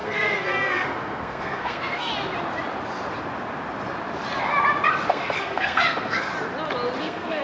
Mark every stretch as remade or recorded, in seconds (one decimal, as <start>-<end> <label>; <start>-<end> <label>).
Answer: 0.0-2.1 remade; 2.1-5.1 recorded; 5.1-6.3 remade; 6.3-7.0 recorded; 7.0-7.4 remade